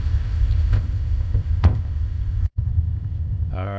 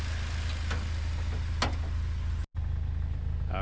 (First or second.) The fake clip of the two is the first